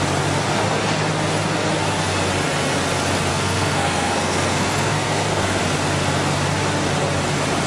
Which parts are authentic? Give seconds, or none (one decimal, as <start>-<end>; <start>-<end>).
0.0-3.3; 5.6-7.7